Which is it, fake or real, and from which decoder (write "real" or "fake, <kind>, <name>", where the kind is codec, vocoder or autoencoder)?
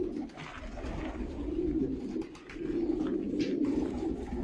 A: real